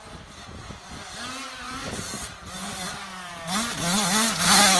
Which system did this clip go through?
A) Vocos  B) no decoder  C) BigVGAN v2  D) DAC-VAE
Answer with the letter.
B